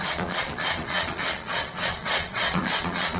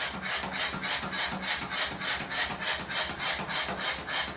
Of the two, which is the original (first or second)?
second